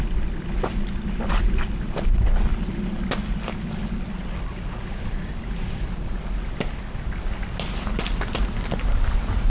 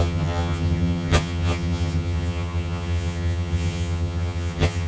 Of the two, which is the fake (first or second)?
second